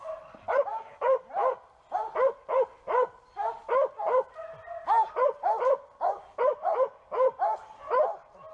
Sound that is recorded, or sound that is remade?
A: recorded